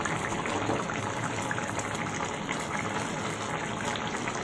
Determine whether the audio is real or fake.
real